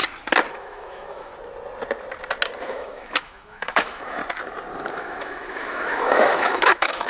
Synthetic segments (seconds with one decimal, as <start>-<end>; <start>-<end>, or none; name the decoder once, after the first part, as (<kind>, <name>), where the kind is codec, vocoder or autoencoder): 0.5-1.3 (autoencoder, DAC-VAE); 2.6-4.2; 4.9-7.1